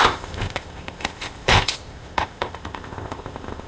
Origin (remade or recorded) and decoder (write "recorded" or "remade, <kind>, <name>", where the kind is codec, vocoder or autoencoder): remade, codec, ZipCodec